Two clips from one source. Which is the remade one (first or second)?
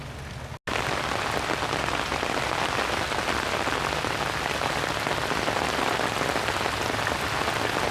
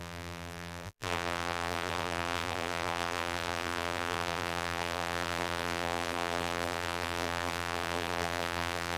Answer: second